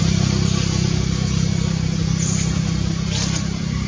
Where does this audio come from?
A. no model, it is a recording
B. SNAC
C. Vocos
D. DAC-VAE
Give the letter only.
A